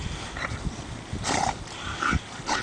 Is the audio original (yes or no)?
yes